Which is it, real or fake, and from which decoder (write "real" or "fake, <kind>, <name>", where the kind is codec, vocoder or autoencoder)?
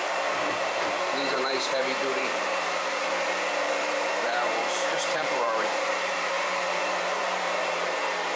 fake, vocoder, BigVGAN v2